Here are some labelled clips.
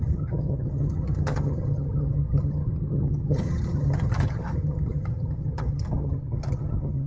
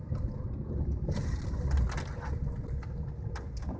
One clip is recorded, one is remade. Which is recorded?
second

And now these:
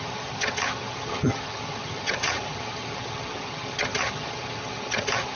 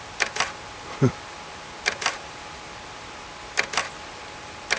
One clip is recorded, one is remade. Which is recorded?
second